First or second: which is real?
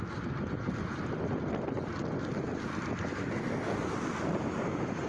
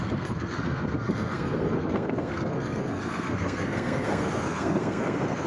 first